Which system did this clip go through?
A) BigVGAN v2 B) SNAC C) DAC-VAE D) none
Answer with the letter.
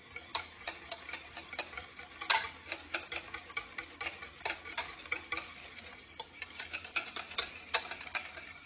D